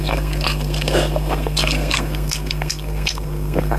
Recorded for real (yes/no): no